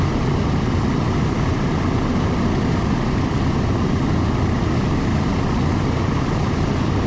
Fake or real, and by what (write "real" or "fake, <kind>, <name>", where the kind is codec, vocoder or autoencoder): real